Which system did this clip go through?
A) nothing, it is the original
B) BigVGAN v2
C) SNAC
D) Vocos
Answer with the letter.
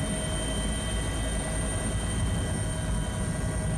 A